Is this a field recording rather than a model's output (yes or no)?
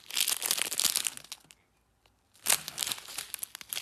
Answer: yes